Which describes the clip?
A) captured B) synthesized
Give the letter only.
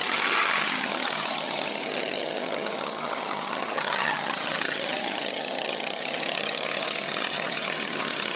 B